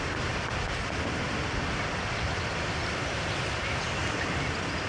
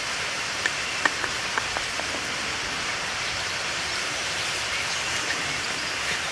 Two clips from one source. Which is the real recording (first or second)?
first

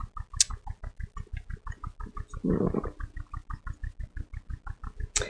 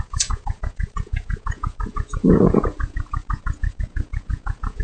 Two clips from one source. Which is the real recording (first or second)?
first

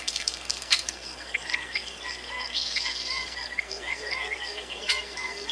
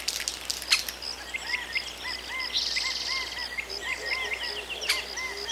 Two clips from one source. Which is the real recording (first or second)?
second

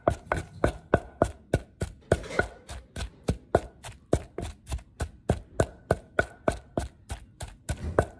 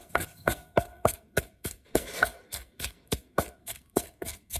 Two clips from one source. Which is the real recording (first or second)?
first